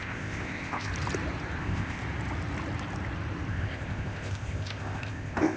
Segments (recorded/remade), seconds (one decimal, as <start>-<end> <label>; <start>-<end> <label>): 0.0-0.9 remade; 0.9-1.6 recorded; 1.6-2.0 remade; 2.0-3.5 recorded; 3.5-5.6 remade